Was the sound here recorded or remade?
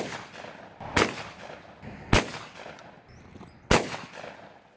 recorded